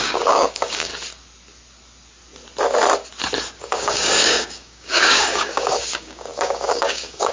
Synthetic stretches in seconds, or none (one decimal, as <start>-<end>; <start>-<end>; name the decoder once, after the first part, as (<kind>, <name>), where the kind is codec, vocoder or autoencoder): 0.0-0.9 (codec, DAC); 3.6-7.3